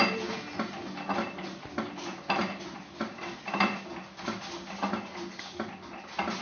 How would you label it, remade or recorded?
recorded